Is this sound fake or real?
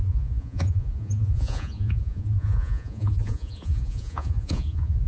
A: fake